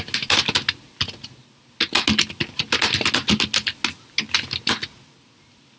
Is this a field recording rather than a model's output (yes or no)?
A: yes